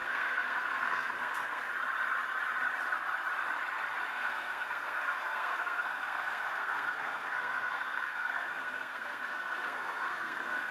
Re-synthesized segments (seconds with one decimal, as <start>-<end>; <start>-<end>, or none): 0.0-1.7; 4.1-10.7